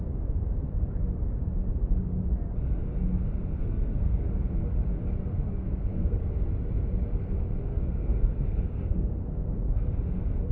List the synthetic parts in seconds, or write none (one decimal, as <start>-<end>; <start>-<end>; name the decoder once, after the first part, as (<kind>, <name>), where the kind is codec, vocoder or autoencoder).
3.6-4.2 (codec, SNAC); 5.6-6.2; 7.7-9.8